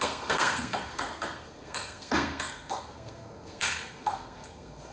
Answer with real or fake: fake